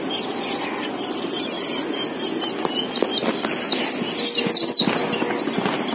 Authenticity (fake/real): real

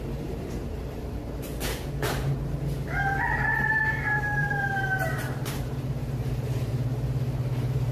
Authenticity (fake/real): fake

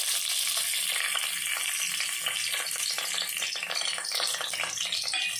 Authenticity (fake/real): real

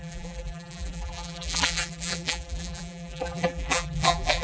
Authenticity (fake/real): fake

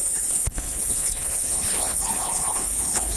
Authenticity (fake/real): fake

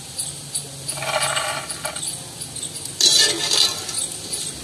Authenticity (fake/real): real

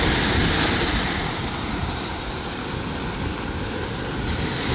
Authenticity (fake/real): real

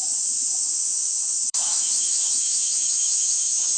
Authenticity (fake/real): fake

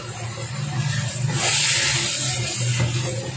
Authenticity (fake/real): real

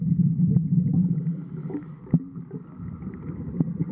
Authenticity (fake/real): real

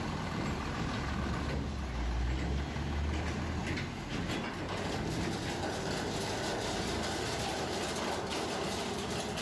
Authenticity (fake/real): real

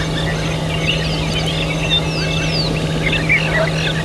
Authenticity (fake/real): real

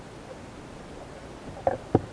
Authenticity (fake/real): real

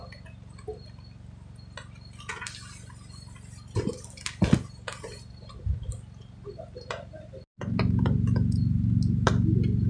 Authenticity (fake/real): real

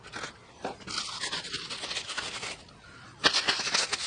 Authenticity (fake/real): real